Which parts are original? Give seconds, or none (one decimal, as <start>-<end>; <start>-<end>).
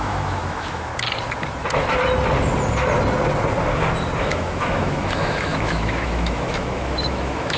0.9-4.2